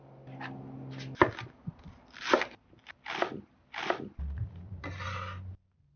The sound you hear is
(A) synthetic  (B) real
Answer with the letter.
B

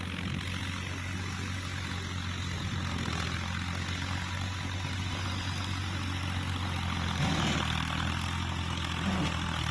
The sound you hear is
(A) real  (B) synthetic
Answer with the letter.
A